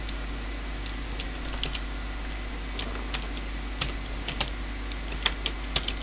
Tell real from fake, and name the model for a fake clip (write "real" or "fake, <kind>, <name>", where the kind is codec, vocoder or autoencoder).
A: real